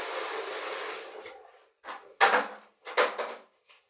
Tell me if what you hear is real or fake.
real